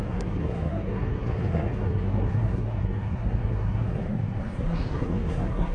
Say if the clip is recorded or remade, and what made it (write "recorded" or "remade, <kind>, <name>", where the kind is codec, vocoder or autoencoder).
remade, codec, SNAC